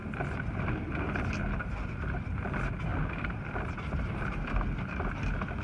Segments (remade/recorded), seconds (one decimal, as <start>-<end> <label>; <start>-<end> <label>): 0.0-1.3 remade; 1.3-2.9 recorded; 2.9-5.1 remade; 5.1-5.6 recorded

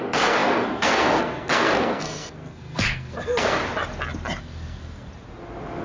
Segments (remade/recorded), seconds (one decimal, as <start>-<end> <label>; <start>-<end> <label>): 0.0-3.6 remade; 3.6-4.4 recorded; 4.4-5.1 remade; 5.1-5.8 recorded

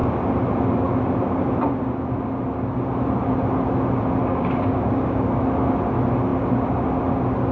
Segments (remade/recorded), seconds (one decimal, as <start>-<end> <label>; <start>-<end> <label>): 0.0-4.2 recorded; 4.2-5.4 remade; 5.4-7.5 recorded

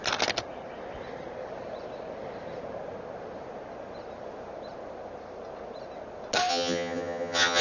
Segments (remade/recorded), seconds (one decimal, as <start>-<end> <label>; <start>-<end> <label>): 0.0-6.5 recorded; 6.5-7.6 remade

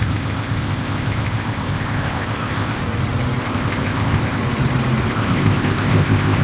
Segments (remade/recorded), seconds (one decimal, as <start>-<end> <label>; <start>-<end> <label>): 0.0-2.8 remade; 2.8-3.4 recorded; 3.4-4.4 remade; 4.4-5.1 recorded; 5.1-6.4 remade

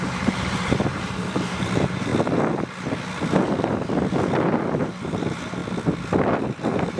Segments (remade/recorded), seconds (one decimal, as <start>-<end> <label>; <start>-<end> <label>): 0.0-2.1 remade; 2.1-4.8 recorded; 4.8-5.6 remade; 5.6-6.4 recorded; 6.4-7.0 remade

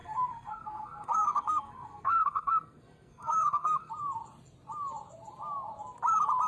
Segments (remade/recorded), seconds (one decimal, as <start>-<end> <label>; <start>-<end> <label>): 0.0-3.9 remade; 3.9-6.5 recorded

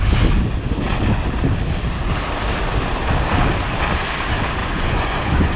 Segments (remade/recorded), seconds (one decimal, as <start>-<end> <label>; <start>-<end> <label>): 0.0-4.6 recorded; 4.6-5.6 remade